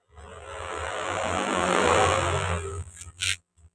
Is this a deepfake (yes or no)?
yes